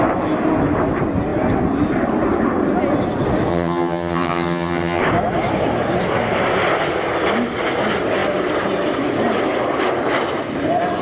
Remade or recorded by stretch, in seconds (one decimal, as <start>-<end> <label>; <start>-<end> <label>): 0.0-3.5 recorded; 3.5-5.0 remade; 5.0-11.0 recorded